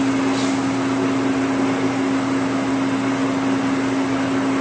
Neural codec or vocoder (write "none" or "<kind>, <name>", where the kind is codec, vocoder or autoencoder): none